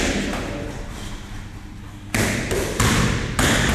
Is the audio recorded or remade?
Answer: recorded